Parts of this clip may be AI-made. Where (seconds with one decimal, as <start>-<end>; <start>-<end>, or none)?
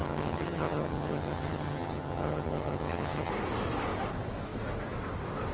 0.0-3.3